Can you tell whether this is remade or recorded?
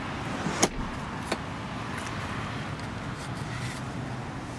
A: recorded